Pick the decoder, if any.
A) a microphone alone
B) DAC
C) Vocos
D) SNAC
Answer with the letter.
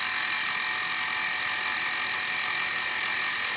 A